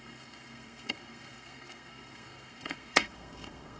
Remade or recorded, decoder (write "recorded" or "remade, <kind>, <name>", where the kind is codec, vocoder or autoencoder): remade, codec, SNAC